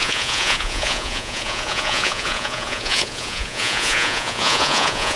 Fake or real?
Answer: fake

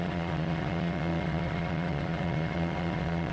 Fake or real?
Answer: fake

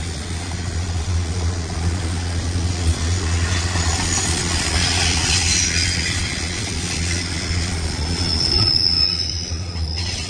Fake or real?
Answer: fake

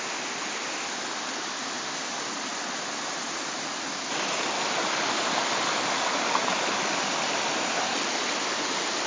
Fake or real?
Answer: real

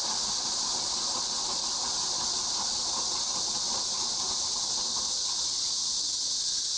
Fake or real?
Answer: real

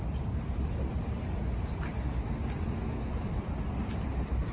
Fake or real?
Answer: real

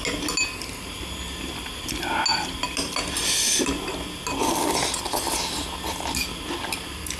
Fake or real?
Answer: real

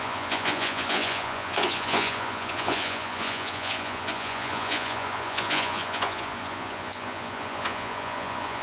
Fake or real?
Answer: fake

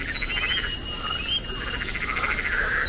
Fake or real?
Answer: real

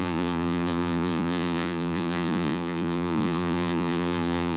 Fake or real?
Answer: fake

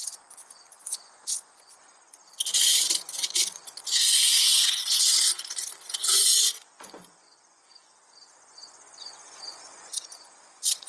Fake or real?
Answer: fake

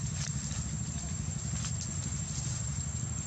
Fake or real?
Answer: real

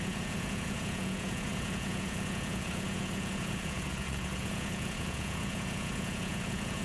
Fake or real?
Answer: fake